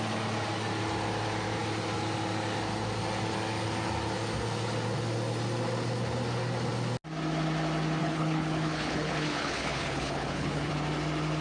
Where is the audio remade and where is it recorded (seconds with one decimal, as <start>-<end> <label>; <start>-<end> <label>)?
0.0-8.0 recorded; 8.0-10.7 remade; 10.7-11.4 recorded